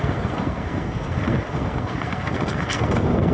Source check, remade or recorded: remade